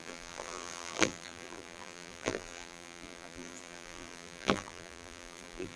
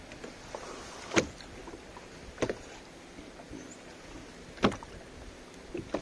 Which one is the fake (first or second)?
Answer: first